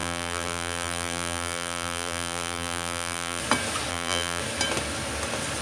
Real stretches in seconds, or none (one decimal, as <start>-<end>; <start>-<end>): 3.4-3.9; 4.4-5.6